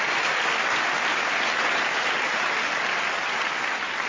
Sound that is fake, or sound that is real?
real